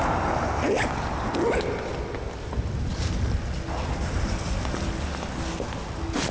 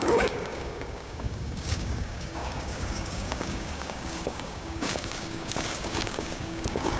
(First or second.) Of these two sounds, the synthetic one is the second